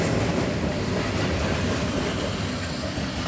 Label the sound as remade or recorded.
recorded